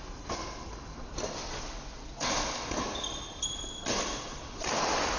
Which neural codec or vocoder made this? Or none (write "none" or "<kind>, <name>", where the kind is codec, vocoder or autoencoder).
none